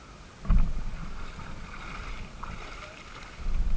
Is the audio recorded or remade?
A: recorded